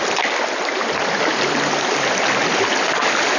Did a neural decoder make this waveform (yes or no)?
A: no